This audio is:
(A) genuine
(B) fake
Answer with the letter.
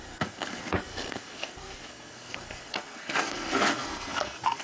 B